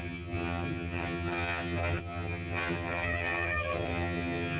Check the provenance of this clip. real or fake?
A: fake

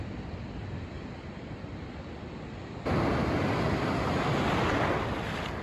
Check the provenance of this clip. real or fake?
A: real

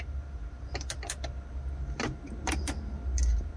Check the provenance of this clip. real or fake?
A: real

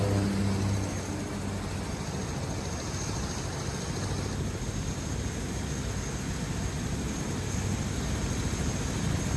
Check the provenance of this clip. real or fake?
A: real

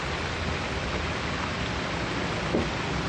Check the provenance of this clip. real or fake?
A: real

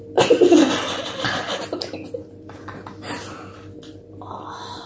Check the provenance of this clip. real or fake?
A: real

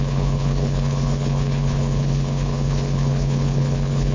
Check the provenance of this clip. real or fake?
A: fake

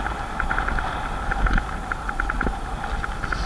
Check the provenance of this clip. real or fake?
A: real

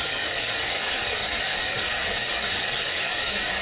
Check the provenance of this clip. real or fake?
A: fake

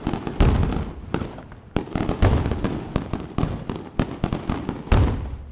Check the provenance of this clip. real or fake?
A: real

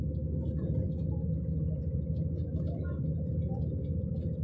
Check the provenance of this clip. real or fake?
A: real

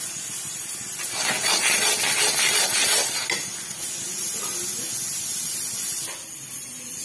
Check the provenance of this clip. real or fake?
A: real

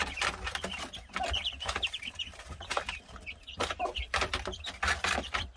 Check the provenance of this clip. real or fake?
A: fake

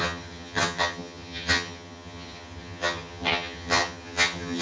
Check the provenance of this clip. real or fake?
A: fake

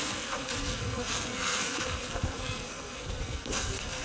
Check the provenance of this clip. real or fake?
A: fake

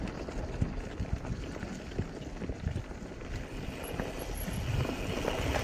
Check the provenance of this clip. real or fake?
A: real